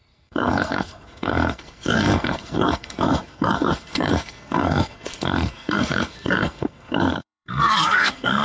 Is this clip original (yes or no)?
no